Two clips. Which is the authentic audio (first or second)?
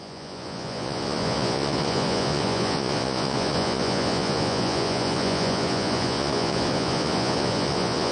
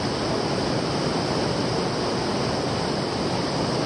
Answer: second